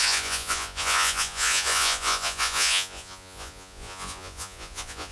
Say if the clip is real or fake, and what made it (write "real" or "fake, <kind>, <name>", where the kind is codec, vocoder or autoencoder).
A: fake, vocoder, Vocos